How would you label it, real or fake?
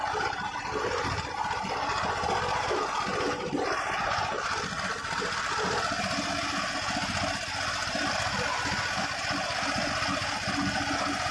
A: real